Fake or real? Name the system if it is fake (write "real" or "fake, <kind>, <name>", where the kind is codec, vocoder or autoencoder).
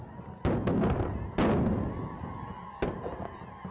real